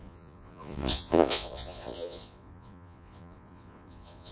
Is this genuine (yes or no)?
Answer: no